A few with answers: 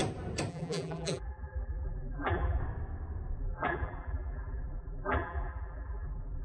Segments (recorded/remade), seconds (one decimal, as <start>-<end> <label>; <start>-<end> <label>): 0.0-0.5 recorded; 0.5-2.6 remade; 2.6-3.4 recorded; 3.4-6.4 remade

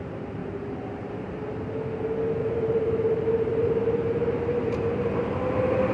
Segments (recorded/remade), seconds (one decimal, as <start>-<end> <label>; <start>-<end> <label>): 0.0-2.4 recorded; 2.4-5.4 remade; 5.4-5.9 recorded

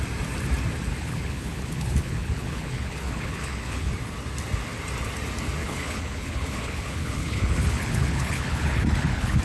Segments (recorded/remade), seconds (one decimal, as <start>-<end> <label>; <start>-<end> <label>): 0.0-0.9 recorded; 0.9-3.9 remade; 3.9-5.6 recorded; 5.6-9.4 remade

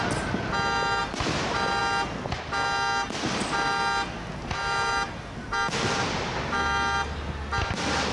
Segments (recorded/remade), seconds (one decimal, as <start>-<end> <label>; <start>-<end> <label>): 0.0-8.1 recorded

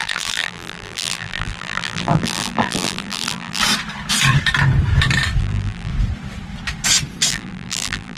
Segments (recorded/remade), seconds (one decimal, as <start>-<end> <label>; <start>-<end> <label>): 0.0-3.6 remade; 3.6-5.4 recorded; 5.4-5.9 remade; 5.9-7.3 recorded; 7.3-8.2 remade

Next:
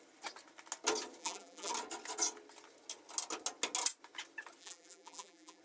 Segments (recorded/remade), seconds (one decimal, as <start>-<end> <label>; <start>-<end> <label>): 0.0-1.2 recorded; 1.2-1.7 remade; 1.7-4.6 recorded; 4.6-5.6 remade